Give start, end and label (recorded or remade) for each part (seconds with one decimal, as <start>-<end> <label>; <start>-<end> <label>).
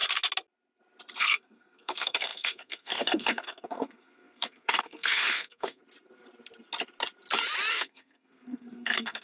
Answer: 0.0-1.2 recorded; 1.2-5.8 remade; 5.8-7.7 recorded; 7.7-9.2 remade